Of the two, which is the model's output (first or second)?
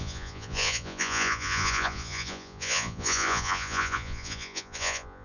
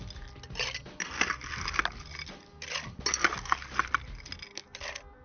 first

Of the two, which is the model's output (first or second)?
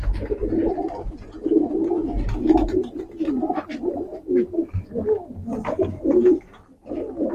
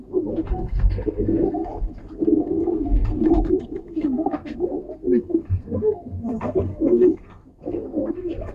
second